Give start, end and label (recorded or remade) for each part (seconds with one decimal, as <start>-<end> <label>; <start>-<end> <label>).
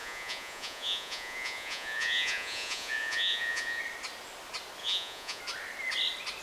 0.0-3.8 remade; 3.8-4.8 recorded; 4.8-5.4 remade; 5.4-6.4 recorded